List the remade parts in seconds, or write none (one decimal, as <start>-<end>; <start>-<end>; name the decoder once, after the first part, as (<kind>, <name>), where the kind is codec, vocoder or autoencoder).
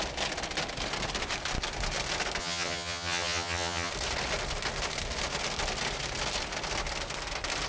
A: 2.4-3.9 (vocoder, HiFi-GAN)